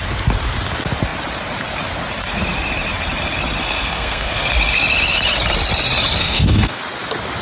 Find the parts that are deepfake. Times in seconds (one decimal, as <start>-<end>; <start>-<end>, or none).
3.6-4.5; 6.2-6.8